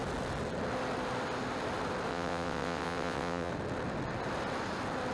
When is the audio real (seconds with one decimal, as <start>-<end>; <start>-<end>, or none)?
0.0-2.1; 3.5-5.1